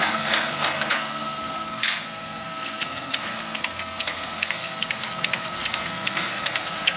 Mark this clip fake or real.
fake